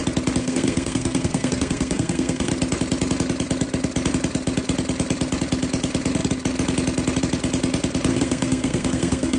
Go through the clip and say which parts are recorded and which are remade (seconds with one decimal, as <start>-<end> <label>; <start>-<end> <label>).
0.0-0.4 recorded; 0.4-2.5 remade; 2.5-8.1 recorded; 8.1-9.4 remade